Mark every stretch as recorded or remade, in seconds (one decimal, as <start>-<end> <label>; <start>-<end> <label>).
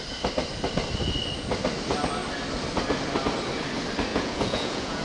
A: 0.0-4.1 recorded; 4.1-5.0 remade